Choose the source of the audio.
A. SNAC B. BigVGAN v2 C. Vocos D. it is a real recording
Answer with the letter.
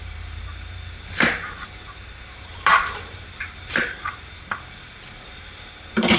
B